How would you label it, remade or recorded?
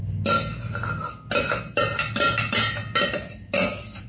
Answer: recorded